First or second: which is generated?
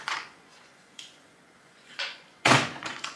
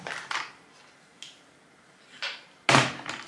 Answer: first